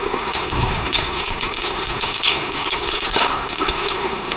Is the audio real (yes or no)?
no